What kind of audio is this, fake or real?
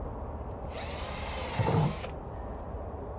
fake